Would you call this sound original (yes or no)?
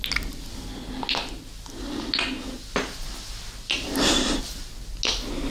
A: yes